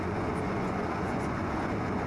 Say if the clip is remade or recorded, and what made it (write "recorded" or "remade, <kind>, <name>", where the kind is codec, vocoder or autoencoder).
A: remade, vocoder, Vocos